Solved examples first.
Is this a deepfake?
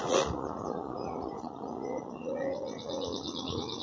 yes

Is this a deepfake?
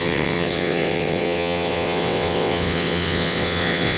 yes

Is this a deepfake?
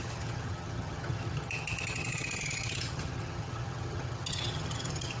yes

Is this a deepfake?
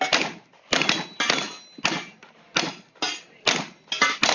no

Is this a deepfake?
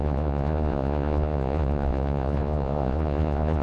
yes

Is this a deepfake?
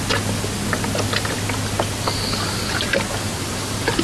no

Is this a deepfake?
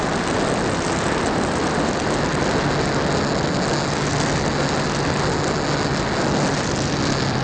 no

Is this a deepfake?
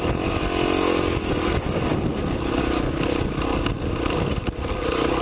no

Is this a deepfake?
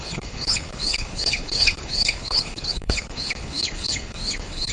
yes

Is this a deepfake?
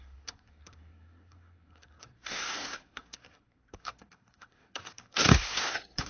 yes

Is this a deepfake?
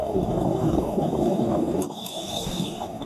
yes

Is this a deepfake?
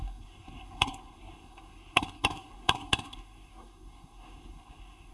yes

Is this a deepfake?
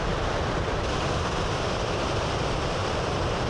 yes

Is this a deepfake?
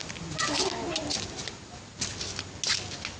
no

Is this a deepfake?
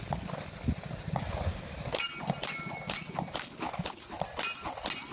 no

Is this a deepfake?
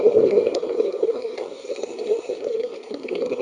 yes